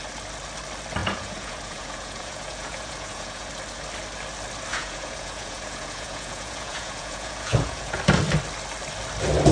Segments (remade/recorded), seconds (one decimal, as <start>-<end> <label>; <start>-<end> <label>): 0.0-1.0 recorded; 1.0-3.5 remade; 3.5-4.7 recorded; 4.7-8.0 remade; 8.0-9.5 recorded

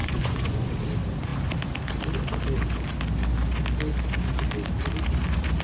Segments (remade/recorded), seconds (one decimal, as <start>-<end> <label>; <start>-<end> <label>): 0.0-0.7 remade; 0.7-5.6 recorded